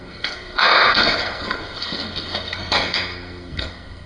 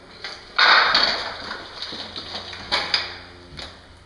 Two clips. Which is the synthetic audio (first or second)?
first